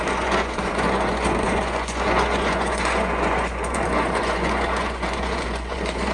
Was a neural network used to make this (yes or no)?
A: yes